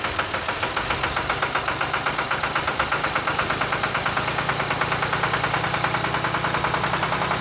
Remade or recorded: recorded